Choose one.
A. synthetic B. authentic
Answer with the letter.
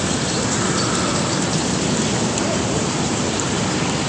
B